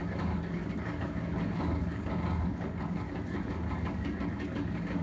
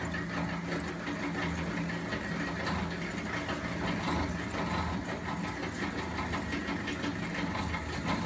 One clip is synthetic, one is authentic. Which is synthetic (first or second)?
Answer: first